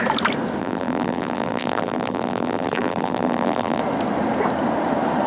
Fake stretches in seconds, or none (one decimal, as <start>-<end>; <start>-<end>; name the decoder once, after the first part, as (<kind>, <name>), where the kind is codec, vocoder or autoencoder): 0.6-3.8 (vocoder, BigVGAN v2)